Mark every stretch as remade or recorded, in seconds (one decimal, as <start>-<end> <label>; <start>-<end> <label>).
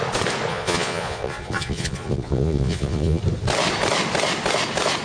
0.0-0.5 recorded; 0.5-3.2 remade; 3.2-5.0 recorded